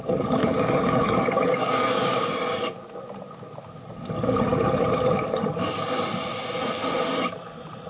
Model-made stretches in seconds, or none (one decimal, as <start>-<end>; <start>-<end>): 0.4-2.3